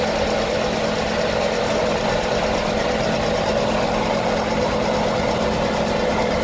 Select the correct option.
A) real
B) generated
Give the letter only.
A